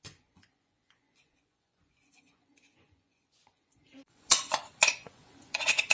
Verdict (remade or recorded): remade